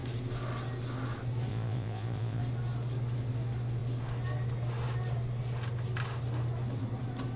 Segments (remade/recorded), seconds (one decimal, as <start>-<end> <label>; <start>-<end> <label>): 0.0-1.5 recorded; 1.5-2.4 remade; 2.4-7.4 recorded

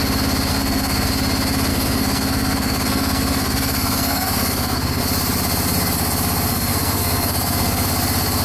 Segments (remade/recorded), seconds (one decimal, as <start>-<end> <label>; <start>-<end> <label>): 0.0-0.5 recorded; 0.5-1.1 remade; 1.1-1.7 recorded; 1.7-5.0 remade; 5.0-6.5 recorded; 6.5-7.9 remade; 7.9-8.4 recorded

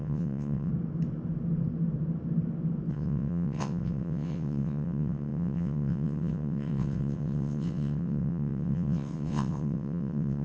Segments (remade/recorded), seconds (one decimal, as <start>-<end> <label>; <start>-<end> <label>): 0.0-0.7 remade; 0.7-2.9 recorded; 2.9-10.4 remade

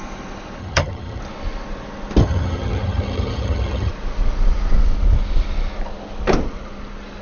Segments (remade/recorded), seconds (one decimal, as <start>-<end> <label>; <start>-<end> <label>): 0.0-0.6 recorded; 0.6-1.2 remade; 1.2-2.2 recorded; 2.2-3.9 remade; 3.9-7.2 recorded

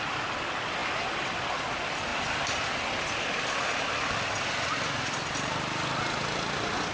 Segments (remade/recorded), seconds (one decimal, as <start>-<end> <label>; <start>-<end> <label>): 0.0-6.9 recorded

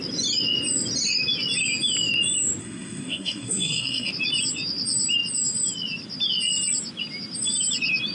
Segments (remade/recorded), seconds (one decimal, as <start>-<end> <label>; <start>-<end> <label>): 0.0-2.6 recorded; 2.6-4.1 remade; 4.1-8.1 recorded

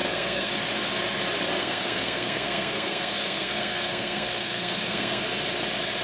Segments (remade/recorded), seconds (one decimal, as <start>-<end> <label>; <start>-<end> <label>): 0.0-0.5 remade; 0.5-1.6 recorded; 1.6-5.2 remade; 5.2-6.0 recorded